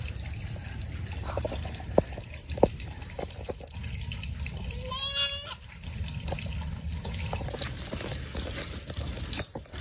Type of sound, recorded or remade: recorded